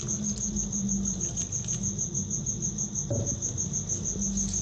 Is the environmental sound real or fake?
real